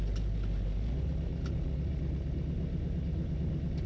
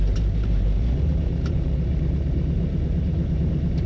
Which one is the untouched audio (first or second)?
first